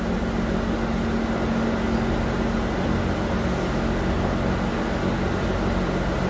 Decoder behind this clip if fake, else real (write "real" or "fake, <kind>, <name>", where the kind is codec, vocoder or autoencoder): real